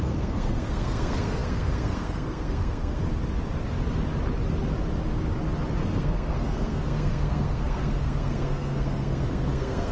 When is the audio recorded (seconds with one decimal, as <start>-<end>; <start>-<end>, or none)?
3.0-5.8